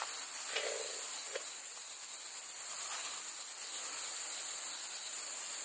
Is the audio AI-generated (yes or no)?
no